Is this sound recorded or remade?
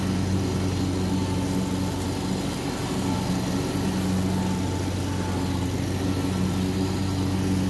recorded